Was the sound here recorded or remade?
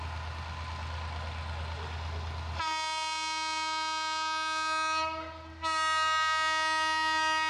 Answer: recorded